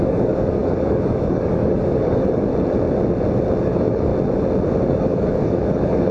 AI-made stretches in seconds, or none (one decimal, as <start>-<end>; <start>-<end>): 0.0-2.5; 3.6-4.1; 4.9-6.1